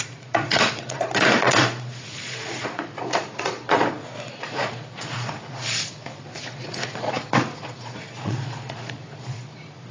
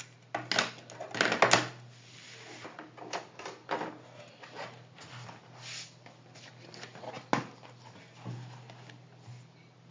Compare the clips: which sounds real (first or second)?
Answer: second